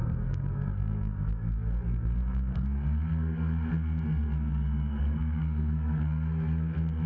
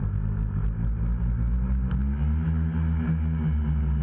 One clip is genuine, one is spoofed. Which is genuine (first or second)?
second